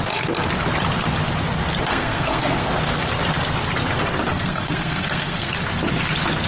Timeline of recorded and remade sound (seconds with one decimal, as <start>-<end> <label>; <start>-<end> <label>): 0.0-1.9 recorded; 1.9-2.7 remade; 2.7-4.3 recorded; 4.3-5.5 remade; 5.5-6.5 recorded